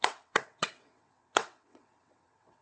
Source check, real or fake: fake